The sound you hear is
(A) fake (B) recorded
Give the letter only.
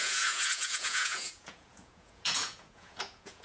A